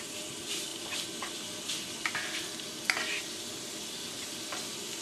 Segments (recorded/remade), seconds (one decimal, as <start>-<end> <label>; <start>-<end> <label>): 0.0-5.0 recorded